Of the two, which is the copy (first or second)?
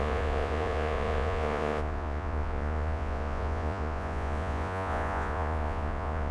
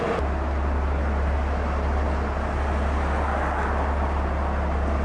first